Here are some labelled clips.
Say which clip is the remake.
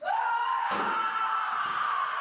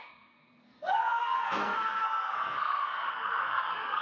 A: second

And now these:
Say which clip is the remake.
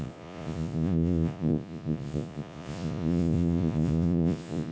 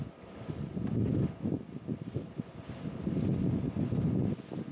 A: first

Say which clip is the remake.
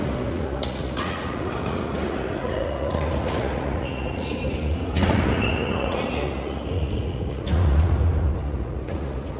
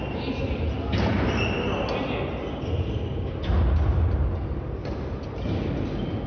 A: first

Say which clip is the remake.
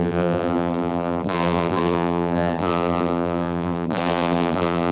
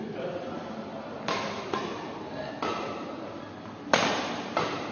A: first